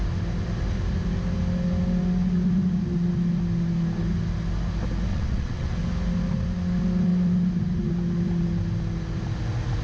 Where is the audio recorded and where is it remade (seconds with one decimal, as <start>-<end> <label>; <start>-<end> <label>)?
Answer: 0.0-5.1 recorded; 5.1-5.7 remade; 5.7-9.8 recorded